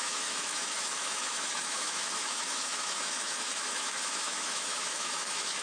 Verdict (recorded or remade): remade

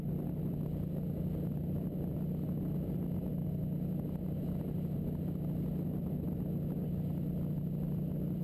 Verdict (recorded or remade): recorded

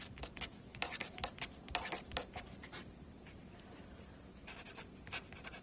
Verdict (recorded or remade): recorded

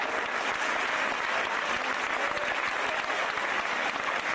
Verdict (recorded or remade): recorded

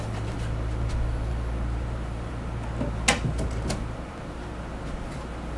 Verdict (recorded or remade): recorded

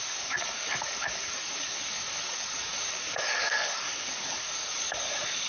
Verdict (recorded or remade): remade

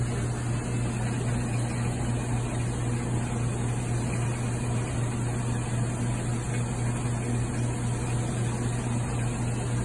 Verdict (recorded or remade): recorded